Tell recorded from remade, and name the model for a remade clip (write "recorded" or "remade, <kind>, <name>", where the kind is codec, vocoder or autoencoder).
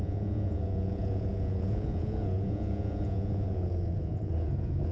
remade, vocoder, Vocos